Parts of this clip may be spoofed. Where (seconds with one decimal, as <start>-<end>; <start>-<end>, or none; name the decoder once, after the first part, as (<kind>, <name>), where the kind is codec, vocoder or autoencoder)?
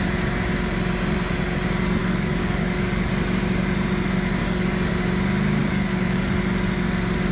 2.0-3.1 (codec, DAC); 4.4-4.9; 5.6-6.3